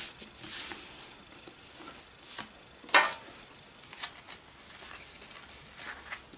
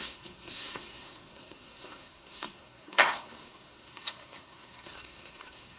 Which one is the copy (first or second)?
second